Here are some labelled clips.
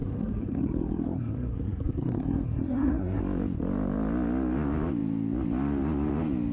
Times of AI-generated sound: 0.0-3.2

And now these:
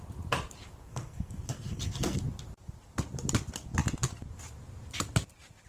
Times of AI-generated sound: 0.9-2.2

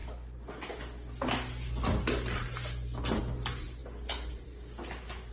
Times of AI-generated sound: none

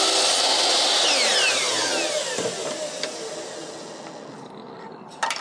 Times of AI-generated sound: none

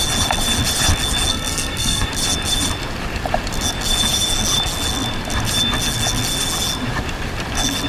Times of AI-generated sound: 1.3-2.1

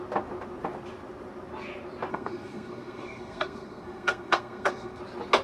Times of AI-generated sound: 2.1-5.0

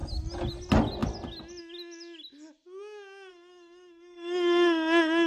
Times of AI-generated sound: 3.3-5.3

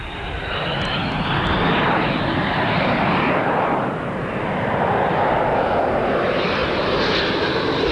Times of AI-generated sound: none